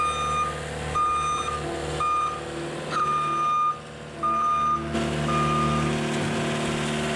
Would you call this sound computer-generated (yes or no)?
no